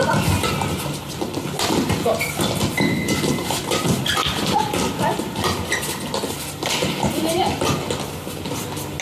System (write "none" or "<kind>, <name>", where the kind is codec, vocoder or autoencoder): none